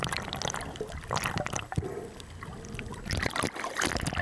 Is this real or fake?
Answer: real